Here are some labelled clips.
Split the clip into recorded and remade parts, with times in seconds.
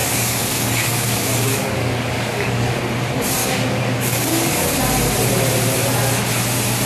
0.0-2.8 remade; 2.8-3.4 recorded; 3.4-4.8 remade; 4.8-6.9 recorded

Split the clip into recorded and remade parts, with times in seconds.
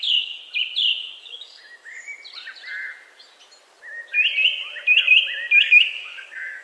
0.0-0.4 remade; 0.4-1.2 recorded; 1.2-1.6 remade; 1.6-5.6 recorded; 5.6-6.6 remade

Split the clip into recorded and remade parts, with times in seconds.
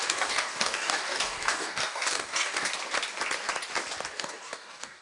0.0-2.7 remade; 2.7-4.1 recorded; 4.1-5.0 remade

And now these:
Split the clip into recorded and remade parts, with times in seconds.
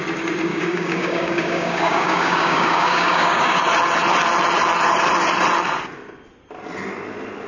0.0-0.5 recorded; 0.5-3.6 remade; 3.6-7.5 recorded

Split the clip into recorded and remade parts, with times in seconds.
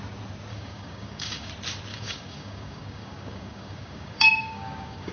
0.0-0.5 recorded; 0.5-1.5 remade; 1.5-1.9 recorded; 1.9-5.1 remade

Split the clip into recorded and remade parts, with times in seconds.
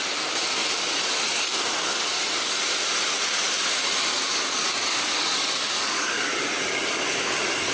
0.0-0.5 recorded; 0.5-2.6 remade; 2.6-4.1 recorded; 4.1-7.7 remade